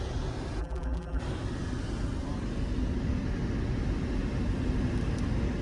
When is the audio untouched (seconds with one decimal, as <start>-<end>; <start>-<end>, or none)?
0.0-0.6; 1.2-5.6

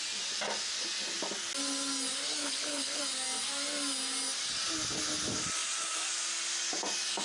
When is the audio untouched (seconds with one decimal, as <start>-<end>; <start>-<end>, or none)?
0.0-2.4; 3.0-7.2

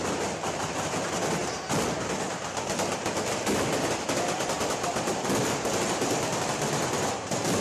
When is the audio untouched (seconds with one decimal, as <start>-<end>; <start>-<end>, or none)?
0.0-7.6

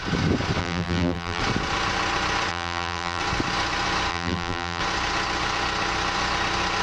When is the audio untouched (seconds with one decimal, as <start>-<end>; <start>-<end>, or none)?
0.0-0.6; 1.4-2.5; 3.2-4.1; 4.8-6.8